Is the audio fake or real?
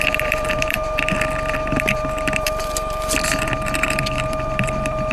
fake